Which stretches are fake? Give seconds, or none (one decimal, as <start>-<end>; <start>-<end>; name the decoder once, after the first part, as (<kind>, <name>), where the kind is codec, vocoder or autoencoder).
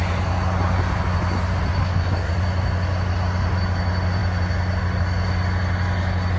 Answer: 1.8-2.3 (codec, SNAC)